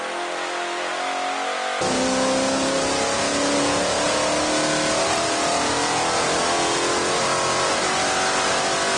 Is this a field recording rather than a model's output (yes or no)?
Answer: no